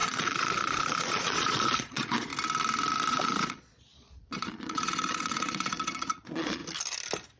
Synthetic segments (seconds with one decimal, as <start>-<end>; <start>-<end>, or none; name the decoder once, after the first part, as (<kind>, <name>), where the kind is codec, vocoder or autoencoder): 0.0-2.3 (vocoder, Vocos); 3.1-6.6